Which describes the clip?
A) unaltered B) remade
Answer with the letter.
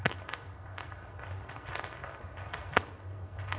B